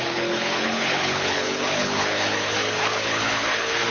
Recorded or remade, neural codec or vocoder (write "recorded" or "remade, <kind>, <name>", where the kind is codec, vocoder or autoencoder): remade, codec, HILCodec